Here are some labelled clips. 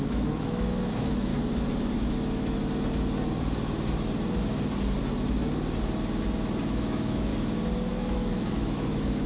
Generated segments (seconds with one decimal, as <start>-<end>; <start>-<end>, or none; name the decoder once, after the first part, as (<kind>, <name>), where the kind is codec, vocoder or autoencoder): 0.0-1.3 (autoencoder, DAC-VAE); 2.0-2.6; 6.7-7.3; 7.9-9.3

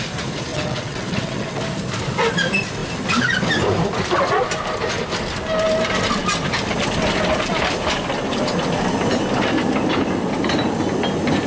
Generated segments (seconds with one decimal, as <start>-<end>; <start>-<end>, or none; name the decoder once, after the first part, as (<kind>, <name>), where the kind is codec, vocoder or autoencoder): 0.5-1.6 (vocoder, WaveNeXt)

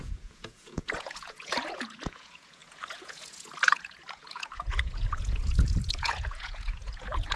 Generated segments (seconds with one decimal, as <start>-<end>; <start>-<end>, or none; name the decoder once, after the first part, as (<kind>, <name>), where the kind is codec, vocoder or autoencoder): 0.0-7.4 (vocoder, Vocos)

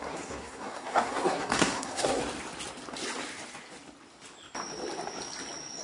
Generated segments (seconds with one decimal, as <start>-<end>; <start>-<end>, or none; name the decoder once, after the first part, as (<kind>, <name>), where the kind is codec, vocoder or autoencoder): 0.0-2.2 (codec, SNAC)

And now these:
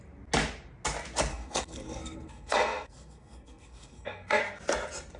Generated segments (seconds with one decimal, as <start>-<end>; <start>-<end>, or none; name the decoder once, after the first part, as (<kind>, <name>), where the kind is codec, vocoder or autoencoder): 1.3-4.4 (codec, SNAC)

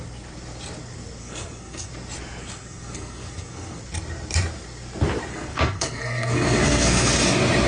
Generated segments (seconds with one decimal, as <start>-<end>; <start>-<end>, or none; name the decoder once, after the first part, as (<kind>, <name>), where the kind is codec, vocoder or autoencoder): 1.2-1.9 (codec, SNAC); 2.4-3.8; 5.3-7.1

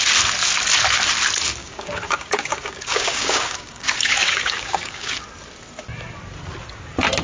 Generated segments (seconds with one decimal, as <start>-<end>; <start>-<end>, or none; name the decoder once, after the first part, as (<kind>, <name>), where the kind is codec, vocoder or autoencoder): 1.6-5.2 (codec, DAC)